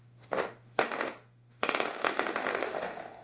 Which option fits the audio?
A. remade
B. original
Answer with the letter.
A